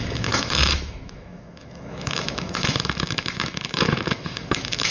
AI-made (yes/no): yes